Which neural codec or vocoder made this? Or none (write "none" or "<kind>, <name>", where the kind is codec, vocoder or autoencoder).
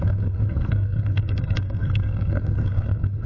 codec, SNAC